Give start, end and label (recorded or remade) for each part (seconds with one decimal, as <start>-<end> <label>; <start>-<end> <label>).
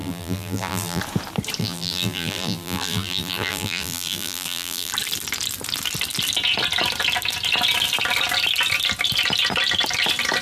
0.0-1.0 remade; 1.0-1.6 recorded; 1.6-4.9 remade; 4.9-10.4 recorded